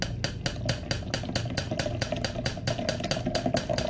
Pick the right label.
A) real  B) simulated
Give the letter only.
A